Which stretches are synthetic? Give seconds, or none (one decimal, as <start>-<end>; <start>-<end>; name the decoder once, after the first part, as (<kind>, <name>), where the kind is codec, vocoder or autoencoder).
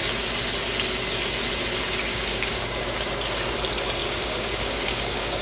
2.1-3.1 (codec, DAC); 4.0-5.4